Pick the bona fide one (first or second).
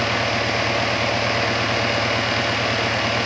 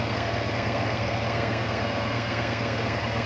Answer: first